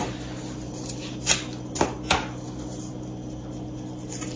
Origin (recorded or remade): recorded